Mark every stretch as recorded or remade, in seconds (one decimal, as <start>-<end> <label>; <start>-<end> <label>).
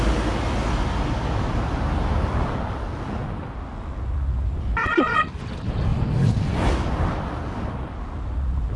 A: 0.0-5.9 recorded; 5.9-7.9 remade; 7.9-8.8 recorded